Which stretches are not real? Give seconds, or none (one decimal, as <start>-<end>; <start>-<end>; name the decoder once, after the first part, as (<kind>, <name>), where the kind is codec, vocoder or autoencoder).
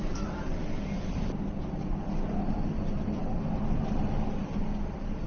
none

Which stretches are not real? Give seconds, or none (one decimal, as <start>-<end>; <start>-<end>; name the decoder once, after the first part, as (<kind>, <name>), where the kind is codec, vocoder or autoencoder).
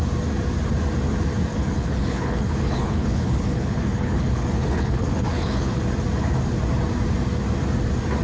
1.5-5.8 (codec, HILCodec)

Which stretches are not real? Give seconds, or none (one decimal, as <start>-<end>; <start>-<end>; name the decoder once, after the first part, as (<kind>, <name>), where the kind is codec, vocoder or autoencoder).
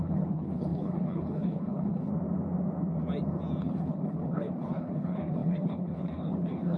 0.0-2.1 (codec, HILCodec); 3.6-6.8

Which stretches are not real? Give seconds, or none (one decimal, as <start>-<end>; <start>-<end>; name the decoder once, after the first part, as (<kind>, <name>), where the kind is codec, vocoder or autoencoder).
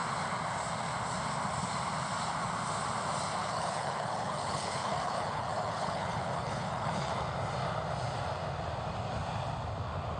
3.4-7.1 (codec, HILCodec)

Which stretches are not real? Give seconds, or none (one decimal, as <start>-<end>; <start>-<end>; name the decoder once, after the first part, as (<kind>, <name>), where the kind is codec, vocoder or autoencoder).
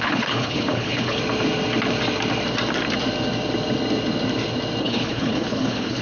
0.0-1.2 (codec, HILCodec); 4.8-6.0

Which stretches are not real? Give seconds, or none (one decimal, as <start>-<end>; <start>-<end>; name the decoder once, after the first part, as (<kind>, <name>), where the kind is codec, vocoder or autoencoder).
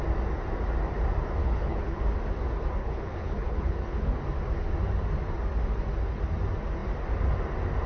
1.4-2.0 (codec, HILCodec); 2.8-4.2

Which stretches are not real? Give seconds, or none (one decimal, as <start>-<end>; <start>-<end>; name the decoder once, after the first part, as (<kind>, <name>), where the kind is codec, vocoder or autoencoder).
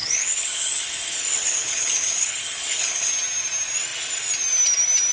0.0-3.1 (codec, HILCodec)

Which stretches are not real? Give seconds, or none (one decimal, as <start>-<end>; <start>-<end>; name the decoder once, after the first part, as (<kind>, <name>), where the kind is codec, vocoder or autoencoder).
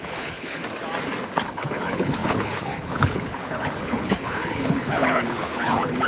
0.0-0.6 (codec, HILCodec); 1.4-6.1